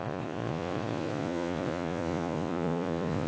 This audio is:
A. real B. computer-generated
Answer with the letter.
B